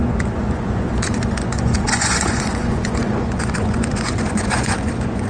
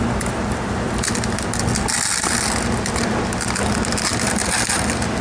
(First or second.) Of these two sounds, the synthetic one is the first